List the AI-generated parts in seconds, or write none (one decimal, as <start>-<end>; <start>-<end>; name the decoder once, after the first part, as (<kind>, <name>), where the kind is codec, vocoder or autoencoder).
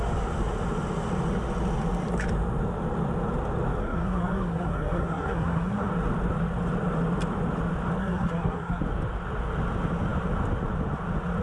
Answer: 3.8-5.9 (codec, SNAC); 8.0-8.8